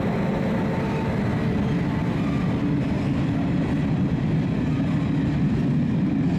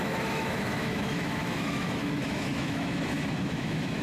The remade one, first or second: second